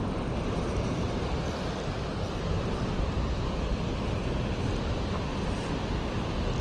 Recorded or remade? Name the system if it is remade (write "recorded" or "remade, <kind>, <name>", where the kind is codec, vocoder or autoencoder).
recorded